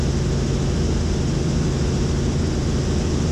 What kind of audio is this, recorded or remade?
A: recorded